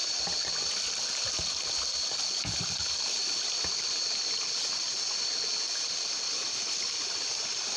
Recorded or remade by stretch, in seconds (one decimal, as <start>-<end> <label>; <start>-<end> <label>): 0.0-7.8 recorded